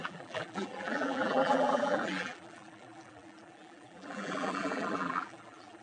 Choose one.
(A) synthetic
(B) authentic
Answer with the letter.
A